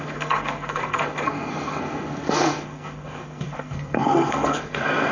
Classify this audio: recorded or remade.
remade